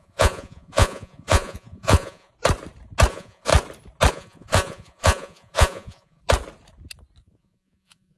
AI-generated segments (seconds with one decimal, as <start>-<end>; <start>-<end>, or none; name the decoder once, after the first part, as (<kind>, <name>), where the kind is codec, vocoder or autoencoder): 0.0-2.3 (vocoder, Vocos); 3.1-3.5; 4.1-6.2; 7.2-8.2